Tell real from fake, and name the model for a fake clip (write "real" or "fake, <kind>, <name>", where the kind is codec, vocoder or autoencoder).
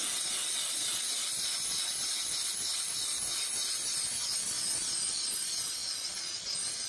real